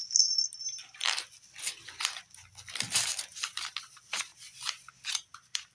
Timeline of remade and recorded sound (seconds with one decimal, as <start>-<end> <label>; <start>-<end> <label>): 0.0-3.1 recorded; 3.1-4.3 remade; 4.3-5.1 recorded; 5.1-5.7 remade